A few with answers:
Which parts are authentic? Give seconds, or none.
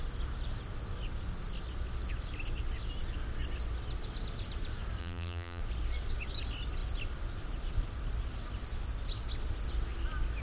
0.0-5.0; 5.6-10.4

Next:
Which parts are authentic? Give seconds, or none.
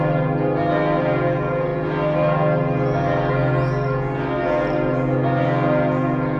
0.0-6.4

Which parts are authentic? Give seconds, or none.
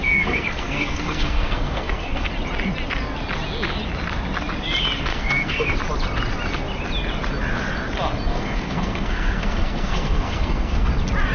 2.3-5.1; 5.8-8.3; 10.9-11.3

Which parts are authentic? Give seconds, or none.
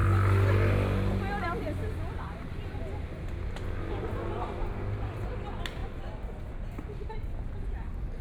0.0-8.2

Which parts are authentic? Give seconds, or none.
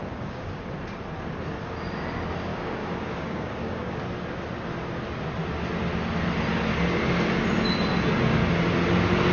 0.8-2.5; 4.0-9.3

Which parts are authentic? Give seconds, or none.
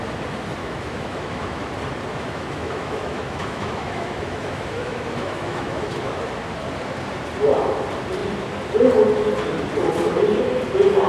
0.0-0.6; 1.7-2.1; 6.2-11.1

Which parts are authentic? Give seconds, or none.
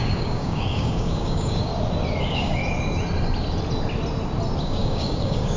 1.7-2.2; 2.6-4.6